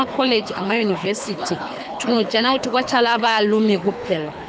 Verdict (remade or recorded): remade